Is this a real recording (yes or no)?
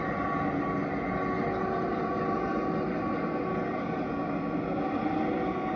yes